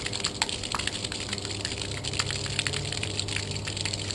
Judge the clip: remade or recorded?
recorded